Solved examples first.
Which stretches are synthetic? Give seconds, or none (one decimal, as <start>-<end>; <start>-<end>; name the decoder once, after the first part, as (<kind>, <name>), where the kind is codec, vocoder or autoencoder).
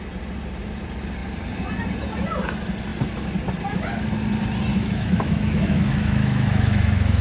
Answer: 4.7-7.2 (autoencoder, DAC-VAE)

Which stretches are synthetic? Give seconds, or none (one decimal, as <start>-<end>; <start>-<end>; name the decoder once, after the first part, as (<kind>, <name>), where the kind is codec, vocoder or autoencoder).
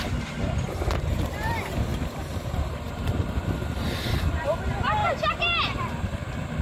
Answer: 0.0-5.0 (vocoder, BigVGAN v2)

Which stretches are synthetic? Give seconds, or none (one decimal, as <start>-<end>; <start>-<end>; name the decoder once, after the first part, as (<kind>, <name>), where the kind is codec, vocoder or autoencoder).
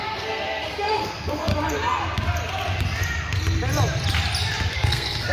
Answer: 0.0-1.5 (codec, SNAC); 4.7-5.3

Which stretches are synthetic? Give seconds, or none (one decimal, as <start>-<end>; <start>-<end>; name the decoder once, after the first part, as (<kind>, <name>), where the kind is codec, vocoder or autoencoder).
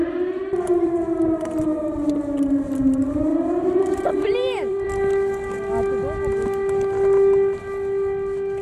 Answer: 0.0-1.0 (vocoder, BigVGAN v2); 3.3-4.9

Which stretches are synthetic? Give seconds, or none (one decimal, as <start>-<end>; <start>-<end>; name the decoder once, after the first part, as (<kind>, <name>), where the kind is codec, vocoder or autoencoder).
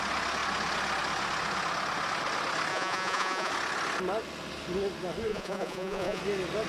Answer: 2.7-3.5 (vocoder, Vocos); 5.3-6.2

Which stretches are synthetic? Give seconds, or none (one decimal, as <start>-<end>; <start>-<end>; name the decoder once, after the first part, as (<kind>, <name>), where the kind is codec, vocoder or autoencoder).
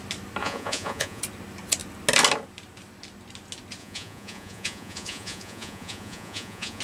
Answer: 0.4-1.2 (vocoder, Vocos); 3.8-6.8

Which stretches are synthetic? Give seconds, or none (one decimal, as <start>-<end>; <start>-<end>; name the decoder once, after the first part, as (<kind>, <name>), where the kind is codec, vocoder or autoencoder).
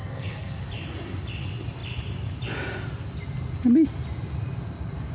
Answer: 0.0-0.6 (codec, SNAC)